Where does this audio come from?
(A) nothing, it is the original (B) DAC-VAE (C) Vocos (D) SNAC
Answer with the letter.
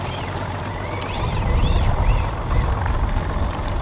A